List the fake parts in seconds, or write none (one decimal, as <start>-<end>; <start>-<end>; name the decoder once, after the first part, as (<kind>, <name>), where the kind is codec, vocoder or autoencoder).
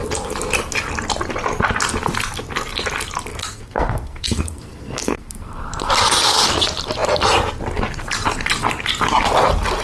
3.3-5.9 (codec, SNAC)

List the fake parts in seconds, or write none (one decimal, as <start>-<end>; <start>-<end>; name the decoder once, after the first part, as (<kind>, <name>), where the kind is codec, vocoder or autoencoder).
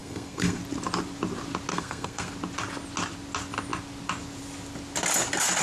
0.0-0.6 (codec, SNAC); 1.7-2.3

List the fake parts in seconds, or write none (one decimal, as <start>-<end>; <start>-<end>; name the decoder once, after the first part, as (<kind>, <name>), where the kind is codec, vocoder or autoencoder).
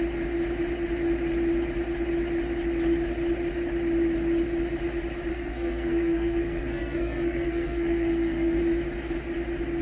5.3-8.6 (codec, SNAC)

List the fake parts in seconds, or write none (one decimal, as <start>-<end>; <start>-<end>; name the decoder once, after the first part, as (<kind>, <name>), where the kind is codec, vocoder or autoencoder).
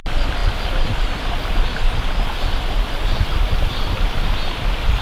none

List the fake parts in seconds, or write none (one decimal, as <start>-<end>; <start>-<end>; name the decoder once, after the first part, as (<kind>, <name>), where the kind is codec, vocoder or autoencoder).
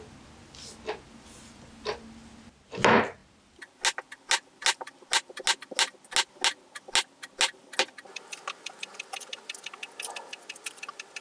none